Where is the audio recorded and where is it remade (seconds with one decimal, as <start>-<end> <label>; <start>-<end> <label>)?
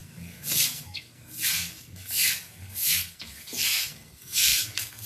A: 0.0-5.1 remade